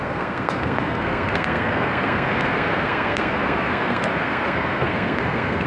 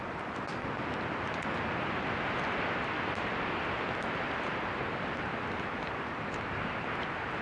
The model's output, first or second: first